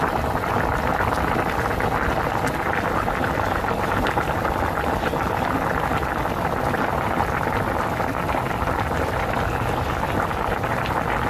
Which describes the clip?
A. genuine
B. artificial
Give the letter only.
A